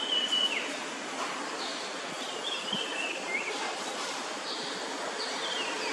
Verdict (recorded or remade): recorded